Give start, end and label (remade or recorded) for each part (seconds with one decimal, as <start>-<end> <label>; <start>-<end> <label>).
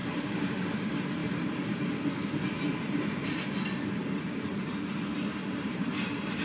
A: 0.0-0.7 remade; 0.7-1.2 recorded; 1.2-2.0 remade; 2.0-3.2 recorded; 3.2-3.8 remade; 3.8-5.2 recorded; 5.2-5.9 remade; 5.9-6.4 recorded